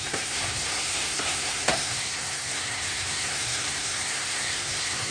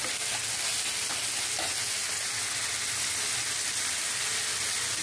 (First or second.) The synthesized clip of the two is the first